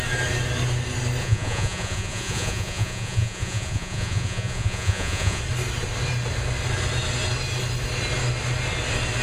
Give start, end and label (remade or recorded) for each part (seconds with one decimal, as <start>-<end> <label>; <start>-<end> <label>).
0.0-1.2 recorded; 1.2-5.4 remade; 5.4-9.2 recorded